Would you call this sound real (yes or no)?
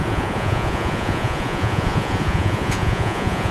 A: no